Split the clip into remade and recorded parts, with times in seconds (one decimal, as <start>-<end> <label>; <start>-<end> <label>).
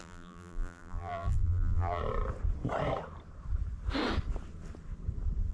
0.0-2.0 remade; 2.0-5.5 recorded